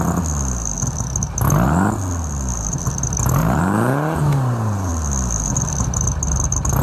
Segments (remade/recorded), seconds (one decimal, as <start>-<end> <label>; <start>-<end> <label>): 0.0-3.4 recorded; 3.4-4.9 remade; 4.9-6.8 recorded